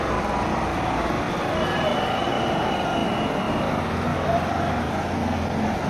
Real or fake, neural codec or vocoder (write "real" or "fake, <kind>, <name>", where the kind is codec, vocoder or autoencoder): real